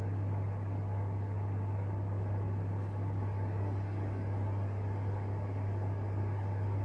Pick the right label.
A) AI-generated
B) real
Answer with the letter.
A